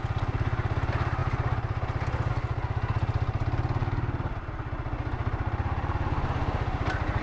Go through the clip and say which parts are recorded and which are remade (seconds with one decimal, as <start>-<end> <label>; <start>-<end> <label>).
0.0-7.2 recorded